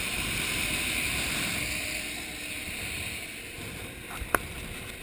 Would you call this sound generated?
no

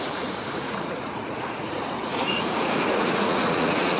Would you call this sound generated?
yes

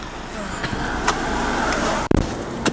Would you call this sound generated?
no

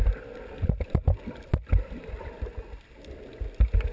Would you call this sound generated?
no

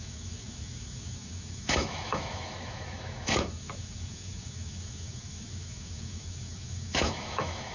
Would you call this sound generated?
yes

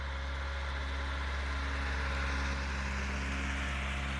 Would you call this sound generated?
no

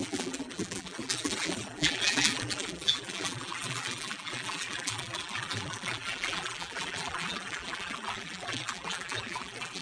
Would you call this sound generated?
yes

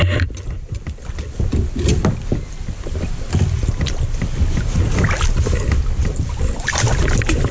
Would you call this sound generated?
no